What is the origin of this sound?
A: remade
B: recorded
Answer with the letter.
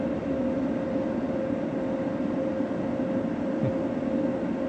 B